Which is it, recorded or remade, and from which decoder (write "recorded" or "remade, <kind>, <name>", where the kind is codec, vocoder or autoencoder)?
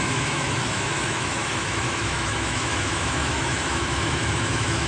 remade, autoencoder, DAC-VAE